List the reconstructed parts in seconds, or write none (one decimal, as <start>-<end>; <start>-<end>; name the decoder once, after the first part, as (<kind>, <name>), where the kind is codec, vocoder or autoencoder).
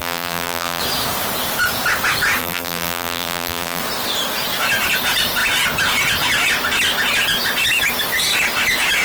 0.0-0.8 (vocoder, BigVGAN v2); 2.4-3.8